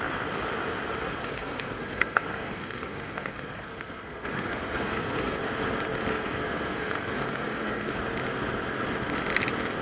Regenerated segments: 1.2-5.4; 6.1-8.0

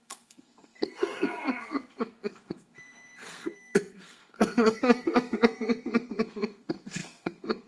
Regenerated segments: 0.0-7.7

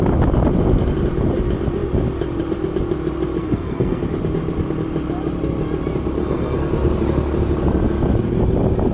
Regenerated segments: 3.4-4.0; 6.2-6.7

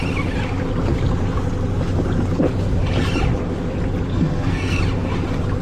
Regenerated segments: 4.1-4.8